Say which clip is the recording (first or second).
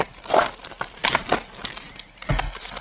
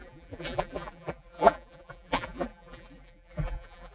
first